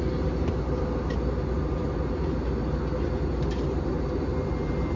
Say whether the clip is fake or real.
real